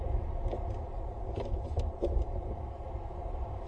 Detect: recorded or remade remade